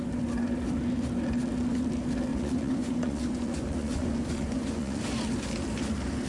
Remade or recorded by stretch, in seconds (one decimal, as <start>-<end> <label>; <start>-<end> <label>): 0.0-2.3 recorded; 2.3-5.0 remade; 5.0-6.3 recorded